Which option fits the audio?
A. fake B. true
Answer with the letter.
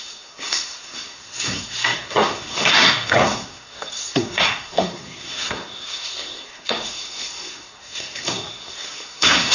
A